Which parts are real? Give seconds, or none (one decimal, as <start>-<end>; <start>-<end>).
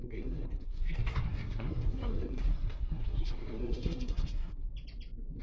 4.7-5.4